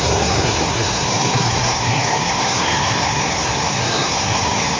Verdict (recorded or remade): remade